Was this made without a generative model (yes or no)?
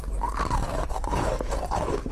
no